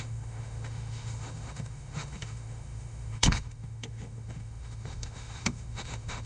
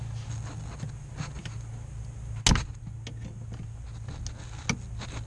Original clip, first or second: second